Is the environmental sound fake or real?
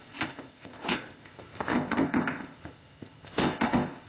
fake